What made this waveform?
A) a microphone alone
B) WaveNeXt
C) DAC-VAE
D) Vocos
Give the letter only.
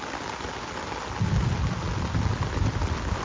A